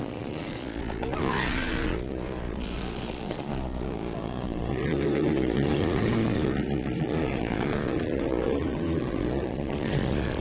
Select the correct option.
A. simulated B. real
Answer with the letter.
A